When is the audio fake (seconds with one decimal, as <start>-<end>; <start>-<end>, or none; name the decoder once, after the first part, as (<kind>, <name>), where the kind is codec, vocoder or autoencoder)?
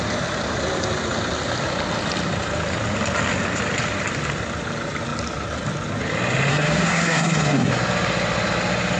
6.5-7.7 (codec, SNAC)